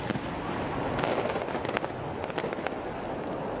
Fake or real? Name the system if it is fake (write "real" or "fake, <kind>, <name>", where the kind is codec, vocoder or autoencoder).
real